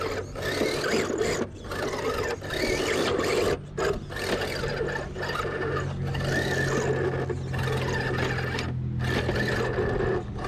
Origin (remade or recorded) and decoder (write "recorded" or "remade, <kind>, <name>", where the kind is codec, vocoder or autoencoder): recorded